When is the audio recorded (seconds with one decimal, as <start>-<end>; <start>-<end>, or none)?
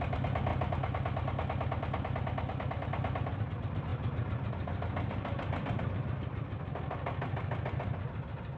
0.0-8.6